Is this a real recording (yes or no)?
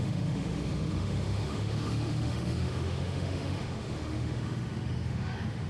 no